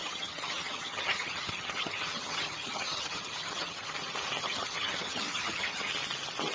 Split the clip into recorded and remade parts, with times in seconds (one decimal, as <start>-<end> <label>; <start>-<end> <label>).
0.0-3.9 remade; 3.9-4.4 recorded; 4.4-5.9 remade; 5.9-6.5 recorded